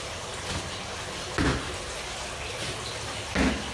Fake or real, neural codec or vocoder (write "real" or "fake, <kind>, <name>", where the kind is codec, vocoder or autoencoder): real